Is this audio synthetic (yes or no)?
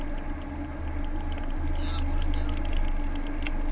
no